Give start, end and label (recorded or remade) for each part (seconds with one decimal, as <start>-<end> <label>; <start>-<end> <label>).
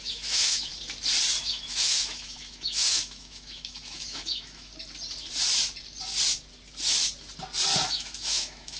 0.0-0.7 remade; 0.7-1.4 recorded; 1.4-4.7 remade; 4.7-7.9 recorded; 7.9-8.8 remade